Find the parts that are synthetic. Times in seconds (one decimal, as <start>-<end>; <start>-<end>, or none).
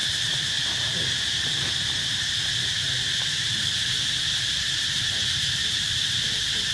none